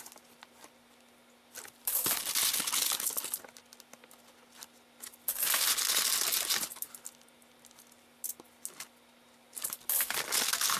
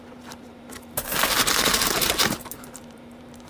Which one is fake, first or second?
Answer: second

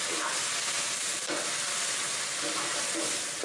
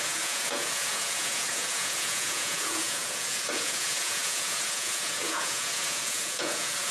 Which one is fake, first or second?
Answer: second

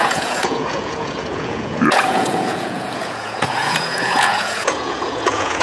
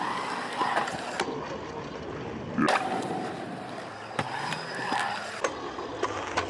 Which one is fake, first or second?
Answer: first